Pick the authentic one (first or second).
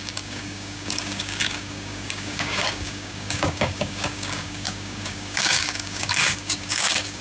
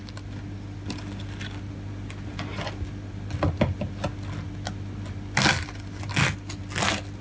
second